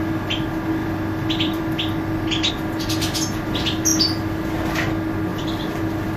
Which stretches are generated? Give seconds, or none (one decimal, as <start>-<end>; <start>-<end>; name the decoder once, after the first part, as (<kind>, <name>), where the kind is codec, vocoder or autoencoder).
0.8-2.5 (vocoder, BigVGAN v2); 5.3-5.8